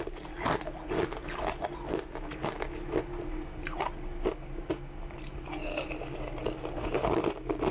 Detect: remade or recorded recorded